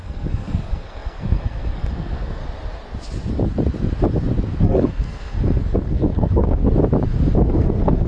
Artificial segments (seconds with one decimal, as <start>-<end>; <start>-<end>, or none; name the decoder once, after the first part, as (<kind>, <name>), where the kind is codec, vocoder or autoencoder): 0.0-2.4 (codec, SNAC); 4.6-6.6; 7.5-8.1